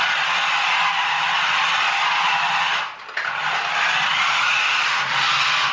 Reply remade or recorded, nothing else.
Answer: recorded